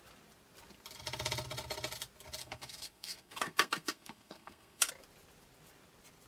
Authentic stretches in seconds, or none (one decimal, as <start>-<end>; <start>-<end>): 0.0-2.4; 4.9-6.3